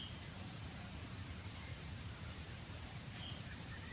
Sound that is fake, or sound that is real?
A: fake